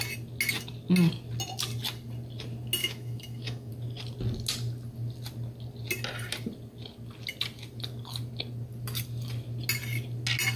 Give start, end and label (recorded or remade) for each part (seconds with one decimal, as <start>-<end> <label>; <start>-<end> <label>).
0.0-2.8 recorded; 2.8-3.7 remade; 3.7-10.6 recorded